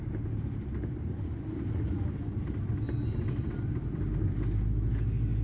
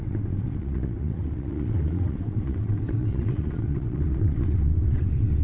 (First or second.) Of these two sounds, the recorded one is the first